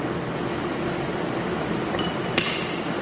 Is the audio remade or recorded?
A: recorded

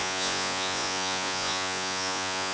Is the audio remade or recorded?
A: remade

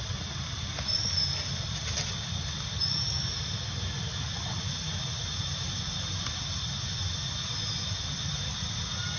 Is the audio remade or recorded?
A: recorded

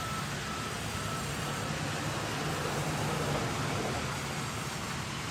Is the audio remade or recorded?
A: recorded